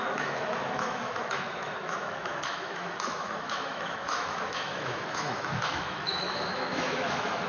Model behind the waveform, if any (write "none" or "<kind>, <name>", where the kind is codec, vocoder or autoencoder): autoencoder, DAC-VAE